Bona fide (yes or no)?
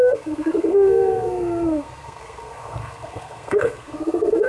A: no